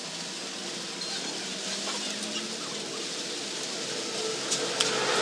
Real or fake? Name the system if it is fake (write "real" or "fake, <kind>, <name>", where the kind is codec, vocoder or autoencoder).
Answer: real